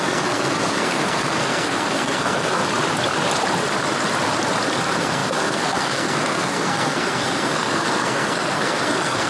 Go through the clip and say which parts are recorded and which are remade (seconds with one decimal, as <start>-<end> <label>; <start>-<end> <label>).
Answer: 0.0-2.6 remade; 2.6-4.8 recorded; 4.8-9.3 remade